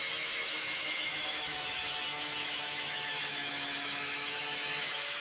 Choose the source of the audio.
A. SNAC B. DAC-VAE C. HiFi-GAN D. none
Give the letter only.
B